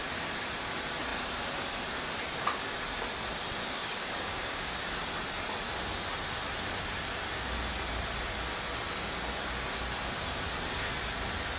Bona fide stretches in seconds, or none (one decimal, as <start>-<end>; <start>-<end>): 0.0-3.6; 4.8-11.6